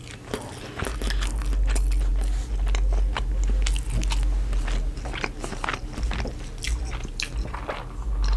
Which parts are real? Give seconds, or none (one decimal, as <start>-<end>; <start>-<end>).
0.0-8.4